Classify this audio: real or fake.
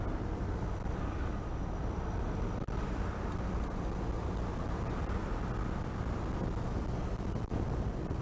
real